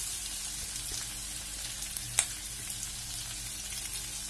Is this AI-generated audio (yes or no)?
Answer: no